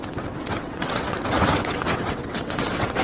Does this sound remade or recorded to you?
remade